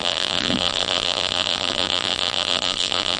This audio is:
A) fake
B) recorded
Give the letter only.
A